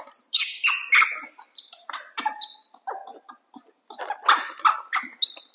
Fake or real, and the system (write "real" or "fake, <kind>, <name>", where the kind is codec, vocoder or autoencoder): real